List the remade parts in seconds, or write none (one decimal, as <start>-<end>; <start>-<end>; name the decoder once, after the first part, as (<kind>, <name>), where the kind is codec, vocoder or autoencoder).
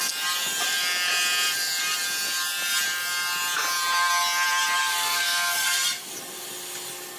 4.8-6.1 (codec, SNAC)